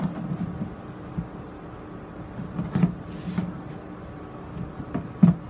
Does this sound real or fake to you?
real